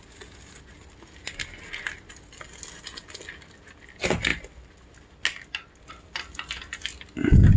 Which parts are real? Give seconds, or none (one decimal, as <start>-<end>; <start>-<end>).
0.0-7.6